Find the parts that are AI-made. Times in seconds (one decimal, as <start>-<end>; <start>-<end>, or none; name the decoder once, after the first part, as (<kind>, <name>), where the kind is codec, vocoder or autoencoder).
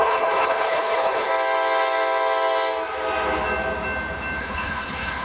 0.0-1.3 (codec, HILCodec); 4.4-5.2